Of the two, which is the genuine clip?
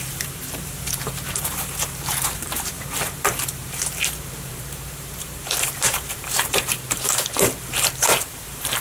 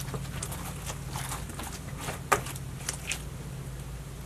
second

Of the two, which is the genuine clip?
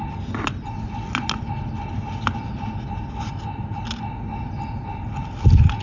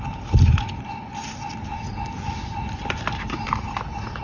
first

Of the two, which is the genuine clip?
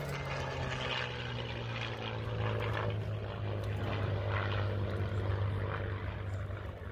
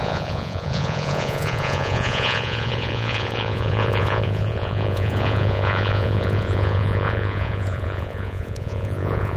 first